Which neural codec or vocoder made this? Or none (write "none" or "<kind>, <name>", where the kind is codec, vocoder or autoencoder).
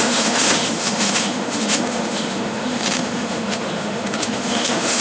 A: autoencoder, DAC-VAE